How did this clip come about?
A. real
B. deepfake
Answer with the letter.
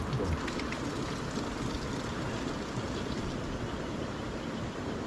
A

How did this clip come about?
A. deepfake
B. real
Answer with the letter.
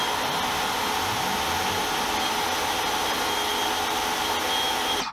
B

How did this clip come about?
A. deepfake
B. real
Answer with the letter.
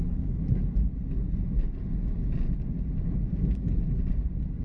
B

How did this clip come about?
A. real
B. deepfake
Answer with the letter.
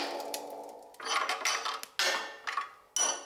A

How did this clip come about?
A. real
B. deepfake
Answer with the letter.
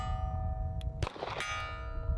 A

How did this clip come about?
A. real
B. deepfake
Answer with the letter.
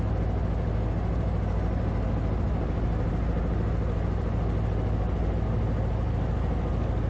A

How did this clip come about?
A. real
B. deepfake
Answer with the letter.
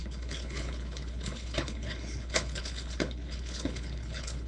B